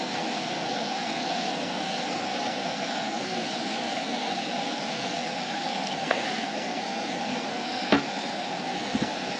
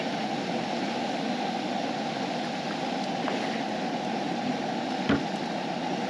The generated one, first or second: first